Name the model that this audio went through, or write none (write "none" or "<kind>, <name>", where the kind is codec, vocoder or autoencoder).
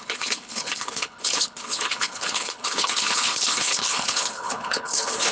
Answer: codec, HILCodec